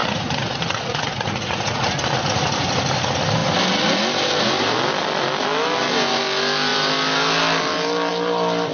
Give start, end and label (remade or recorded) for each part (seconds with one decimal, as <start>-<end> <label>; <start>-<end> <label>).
0.0-1.9 remade; 1.9-8.7 recorded